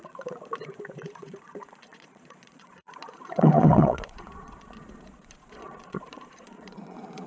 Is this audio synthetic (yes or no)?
yes